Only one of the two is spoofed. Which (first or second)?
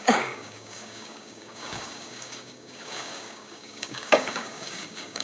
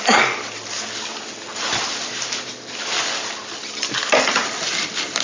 first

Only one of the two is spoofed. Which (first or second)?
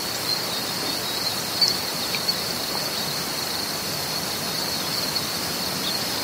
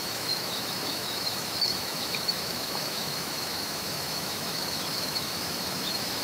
second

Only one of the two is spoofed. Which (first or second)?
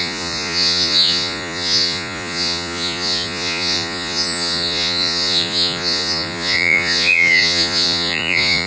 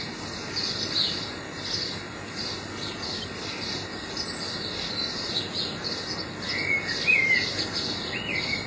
first